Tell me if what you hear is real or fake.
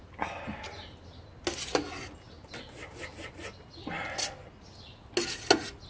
real